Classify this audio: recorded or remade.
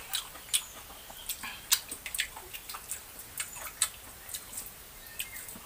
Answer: recorded